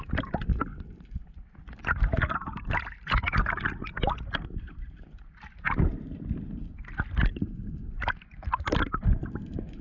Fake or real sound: fake